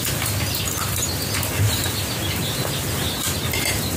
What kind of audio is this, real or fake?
real